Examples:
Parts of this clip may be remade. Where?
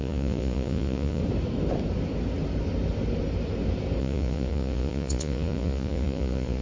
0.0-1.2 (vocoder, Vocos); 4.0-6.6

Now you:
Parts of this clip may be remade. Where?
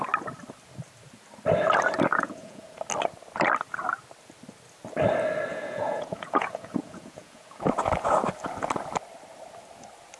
2.1-2.8 (vocoder, Vocos); 5.5-7.7